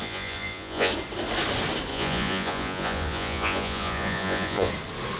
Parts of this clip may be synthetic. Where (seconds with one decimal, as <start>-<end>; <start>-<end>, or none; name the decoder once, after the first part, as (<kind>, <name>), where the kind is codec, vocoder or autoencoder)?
0.0-0.9 (vocoder, Vocos); 1.9-4.7